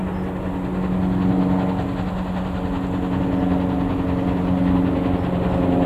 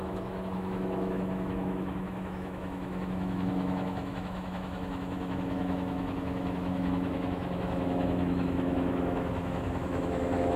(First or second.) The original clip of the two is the first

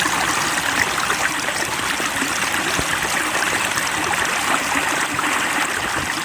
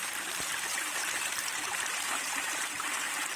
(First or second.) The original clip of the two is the first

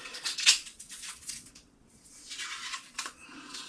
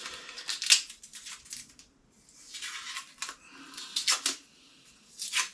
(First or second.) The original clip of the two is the second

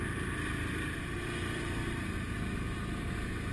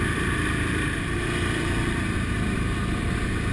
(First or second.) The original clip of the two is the first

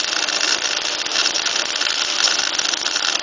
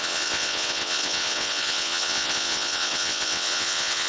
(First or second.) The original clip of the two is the first